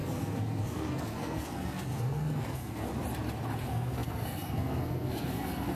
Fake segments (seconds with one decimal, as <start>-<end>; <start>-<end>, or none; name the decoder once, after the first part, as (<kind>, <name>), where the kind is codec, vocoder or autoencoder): 0.0-2.9 (codec, SNAC); 3.6-5.8